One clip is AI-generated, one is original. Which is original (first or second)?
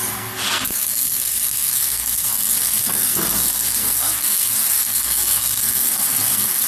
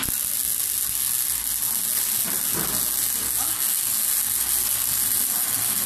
second